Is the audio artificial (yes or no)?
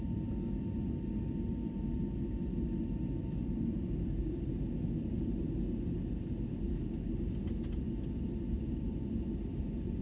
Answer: no